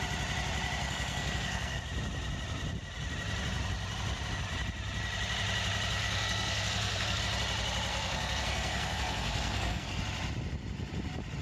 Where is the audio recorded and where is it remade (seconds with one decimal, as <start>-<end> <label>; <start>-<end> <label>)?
0.0-0.8 recorded; 0.8-1.8 remade; 1.8-6.0 recorded; 6.0-7.2 remade; 7.2-7.9 recorded; 7.9-10.0 remade; 10.0-11.4 recorded